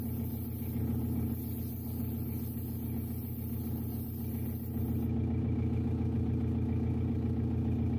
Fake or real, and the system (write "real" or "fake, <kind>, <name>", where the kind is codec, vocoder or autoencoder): real